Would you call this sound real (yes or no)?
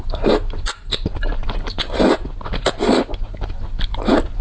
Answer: yes